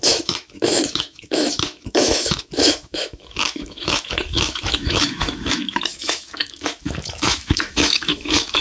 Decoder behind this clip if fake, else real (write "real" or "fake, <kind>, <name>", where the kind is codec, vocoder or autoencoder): fake, autoencoder, DAC-VAE